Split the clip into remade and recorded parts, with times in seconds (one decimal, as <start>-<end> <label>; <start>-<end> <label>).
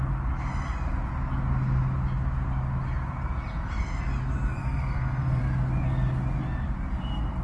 0.0-4.6 recorded; 4.6-5.4 remade; 5.4-7.4 recorded